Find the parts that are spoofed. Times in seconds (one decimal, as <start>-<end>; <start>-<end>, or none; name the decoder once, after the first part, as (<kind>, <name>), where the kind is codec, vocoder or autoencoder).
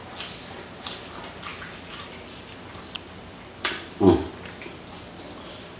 none